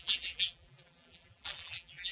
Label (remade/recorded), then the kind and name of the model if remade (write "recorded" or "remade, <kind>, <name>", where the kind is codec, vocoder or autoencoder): remade, vocoder, BigVGAN v2